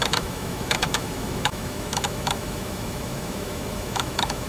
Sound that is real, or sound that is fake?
fake